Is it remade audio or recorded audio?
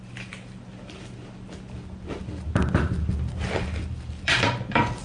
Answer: remade